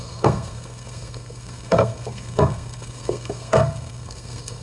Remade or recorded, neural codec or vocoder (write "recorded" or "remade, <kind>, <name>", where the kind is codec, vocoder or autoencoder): remade, codec, SNAC